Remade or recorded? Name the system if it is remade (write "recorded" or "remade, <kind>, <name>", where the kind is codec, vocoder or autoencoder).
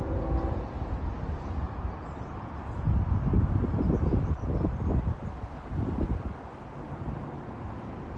recorded